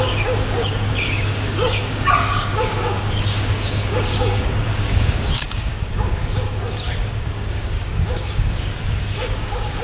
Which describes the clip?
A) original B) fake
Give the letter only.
B